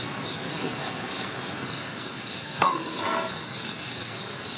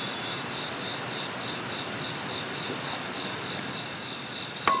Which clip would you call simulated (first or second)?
first